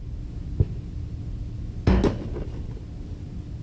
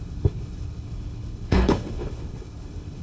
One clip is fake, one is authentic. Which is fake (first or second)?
second